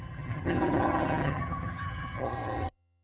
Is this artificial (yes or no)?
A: yes